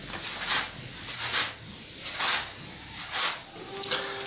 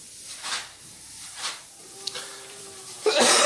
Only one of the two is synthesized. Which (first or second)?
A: second